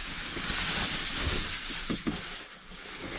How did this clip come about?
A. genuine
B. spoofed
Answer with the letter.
A